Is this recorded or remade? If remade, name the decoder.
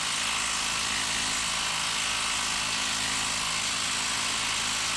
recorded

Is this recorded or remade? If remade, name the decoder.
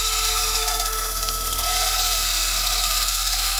remade, codec, SNAC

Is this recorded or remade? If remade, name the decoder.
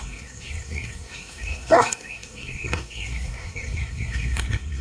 remade, codec, SNAC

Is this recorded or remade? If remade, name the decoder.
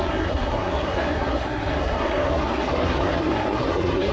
remade, codec, SNAC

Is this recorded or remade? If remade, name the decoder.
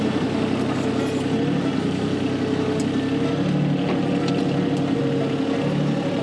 recorded